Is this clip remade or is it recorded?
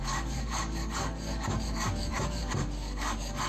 remade